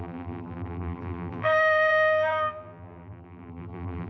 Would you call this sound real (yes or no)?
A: no